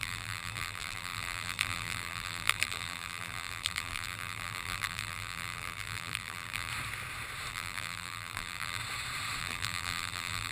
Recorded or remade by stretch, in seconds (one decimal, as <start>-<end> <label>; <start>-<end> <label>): 0.0-6.7 remade; 6.7-7.5 recorded; 7.5-8.8 remade; 8.8-9.4 recorded; 9.4-10.5 remade